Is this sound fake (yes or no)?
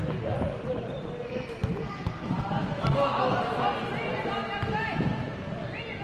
no